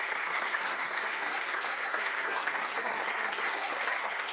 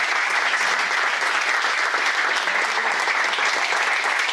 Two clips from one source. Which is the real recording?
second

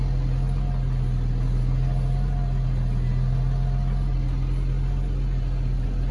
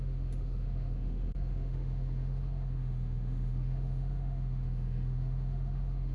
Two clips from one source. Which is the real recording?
first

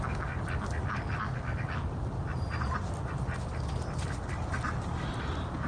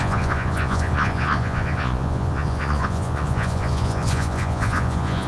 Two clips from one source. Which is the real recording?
first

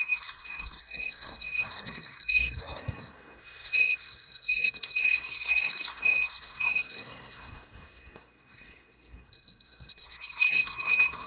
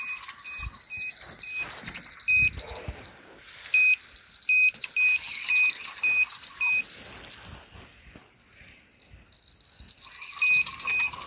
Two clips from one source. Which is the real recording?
second